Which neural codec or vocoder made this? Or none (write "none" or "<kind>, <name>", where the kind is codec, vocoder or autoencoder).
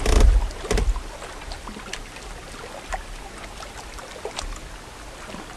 none